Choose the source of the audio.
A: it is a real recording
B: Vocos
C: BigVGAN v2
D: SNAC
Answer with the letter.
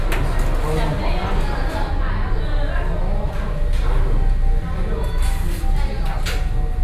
A